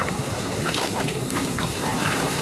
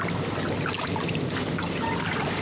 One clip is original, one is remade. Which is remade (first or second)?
first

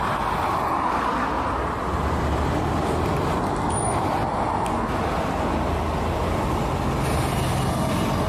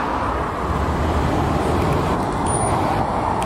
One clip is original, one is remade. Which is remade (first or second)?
second